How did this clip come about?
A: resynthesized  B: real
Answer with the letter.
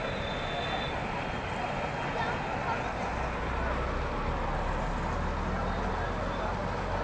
B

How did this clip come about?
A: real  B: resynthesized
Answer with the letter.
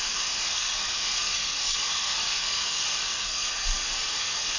B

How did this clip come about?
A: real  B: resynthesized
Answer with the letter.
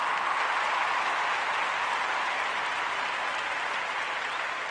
A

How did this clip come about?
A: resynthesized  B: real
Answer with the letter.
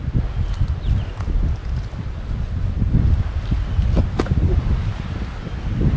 B